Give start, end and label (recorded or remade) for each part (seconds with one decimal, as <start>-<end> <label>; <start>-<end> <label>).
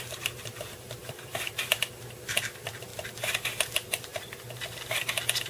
0.0-1.0 recorded; 1.0-1.7 remade; 1.7-2.9 recorded; 2.9-5.1 remade; 5.1-5.5 recorded